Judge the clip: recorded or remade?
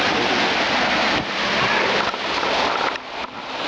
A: recorded